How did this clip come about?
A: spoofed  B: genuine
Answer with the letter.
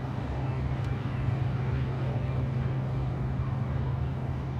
A